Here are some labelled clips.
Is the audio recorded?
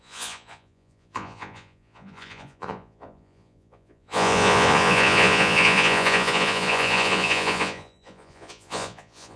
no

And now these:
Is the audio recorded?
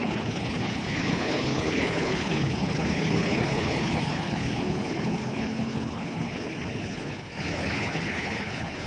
no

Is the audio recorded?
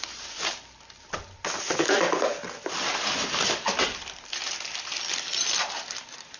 yes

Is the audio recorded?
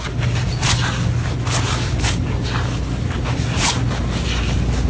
yes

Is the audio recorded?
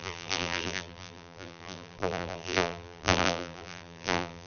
no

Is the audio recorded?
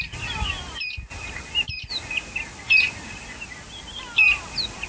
yes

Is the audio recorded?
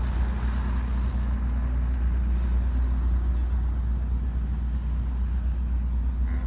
yes